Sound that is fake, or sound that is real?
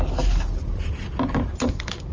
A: real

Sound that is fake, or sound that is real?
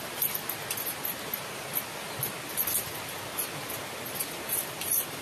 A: real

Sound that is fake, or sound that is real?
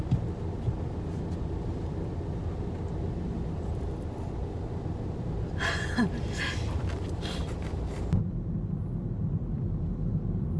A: real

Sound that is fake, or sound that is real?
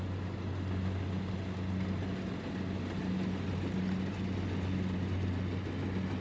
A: real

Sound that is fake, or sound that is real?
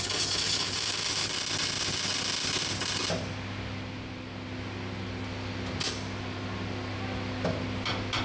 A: real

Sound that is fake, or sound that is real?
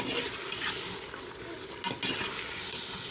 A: real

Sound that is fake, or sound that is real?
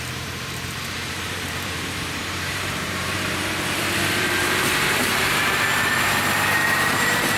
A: fake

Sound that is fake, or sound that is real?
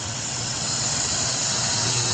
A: fake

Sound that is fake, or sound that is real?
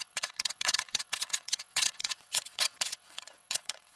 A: fake